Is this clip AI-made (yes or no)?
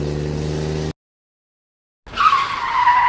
no